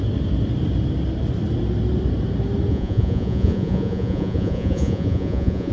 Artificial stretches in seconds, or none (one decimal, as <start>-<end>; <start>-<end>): 2.7-5.7